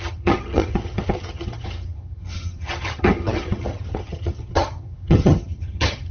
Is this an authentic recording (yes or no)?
no